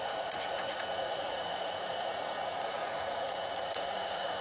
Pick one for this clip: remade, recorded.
remade